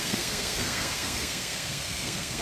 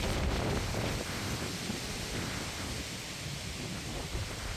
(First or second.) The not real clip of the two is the first